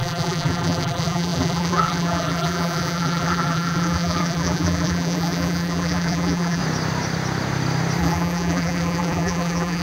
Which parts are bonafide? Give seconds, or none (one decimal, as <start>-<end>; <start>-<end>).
6.6-8.0